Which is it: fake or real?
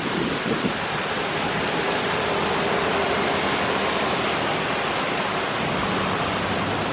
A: real